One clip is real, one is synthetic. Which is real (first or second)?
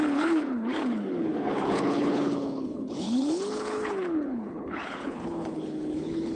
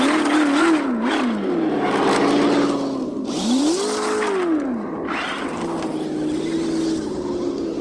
second